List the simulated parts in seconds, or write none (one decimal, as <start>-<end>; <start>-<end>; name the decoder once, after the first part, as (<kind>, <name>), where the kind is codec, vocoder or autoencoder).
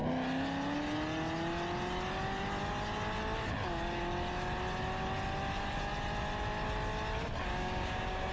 7.5-8.3 (codec, DAC)